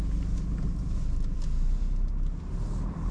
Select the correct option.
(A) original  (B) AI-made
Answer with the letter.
A